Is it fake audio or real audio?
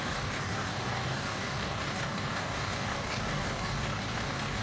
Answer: fake